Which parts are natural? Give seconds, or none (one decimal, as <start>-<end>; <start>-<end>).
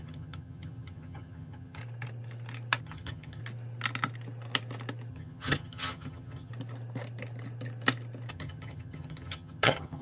1.8-2.8; 3.4-5.1; 6.5-8.3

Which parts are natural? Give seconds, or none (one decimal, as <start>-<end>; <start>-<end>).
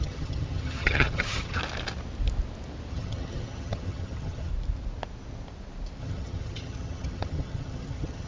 1.6-2.9; 4.5-6.0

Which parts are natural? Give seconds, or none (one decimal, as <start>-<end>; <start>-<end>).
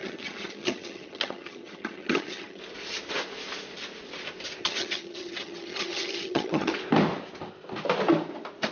2.6-4.6; 6.7-8.7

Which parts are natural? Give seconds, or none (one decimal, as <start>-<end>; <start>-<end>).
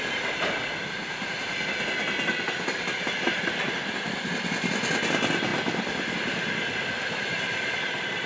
0.0-8.3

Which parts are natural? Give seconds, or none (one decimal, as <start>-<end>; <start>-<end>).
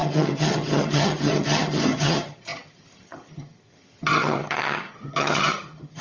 none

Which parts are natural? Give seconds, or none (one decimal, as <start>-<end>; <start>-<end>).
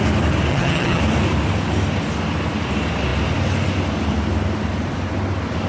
0.0-0.5; 1.0-5.7